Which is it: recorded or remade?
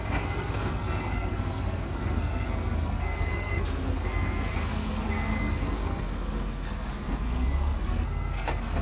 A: remade